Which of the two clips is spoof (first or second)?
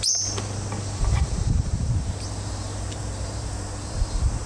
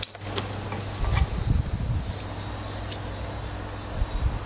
first